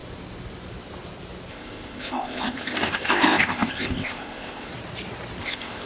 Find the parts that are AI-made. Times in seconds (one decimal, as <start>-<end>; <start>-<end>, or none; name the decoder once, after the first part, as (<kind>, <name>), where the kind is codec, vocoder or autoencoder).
1.5-4.7 (codec, ZipCodec); 5.4-5.9